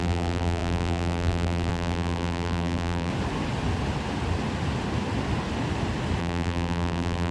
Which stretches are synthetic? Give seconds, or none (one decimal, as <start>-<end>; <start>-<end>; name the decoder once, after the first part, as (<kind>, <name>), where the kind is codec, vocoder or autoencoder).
0.0-3.1 (vocoder, BigVGAN v2); 6.2-7.3

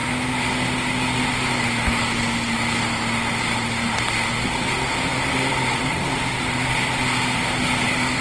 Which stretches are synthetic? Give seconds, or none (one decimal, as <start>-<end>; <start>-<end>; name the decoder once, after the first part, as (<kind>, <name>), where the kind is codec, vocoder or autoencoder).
5.1-6.9 (vocoder, BigVGAN v2)

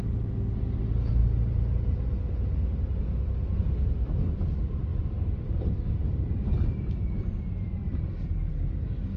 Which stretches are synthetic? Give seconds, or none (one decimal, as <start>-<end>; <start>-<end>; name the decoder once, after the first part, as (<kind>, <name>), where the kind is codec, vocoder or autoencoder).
4.9-8.5 (vocoder, BigVGAN v2)

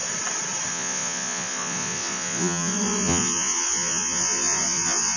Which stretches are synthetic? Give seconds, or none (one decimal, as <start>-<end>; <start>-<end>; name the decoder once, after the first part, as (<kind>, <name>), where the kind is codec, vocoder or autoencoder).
0.7-5.2 (vocoder, Vocos)